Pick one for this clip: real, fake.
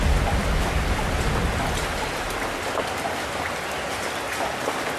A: real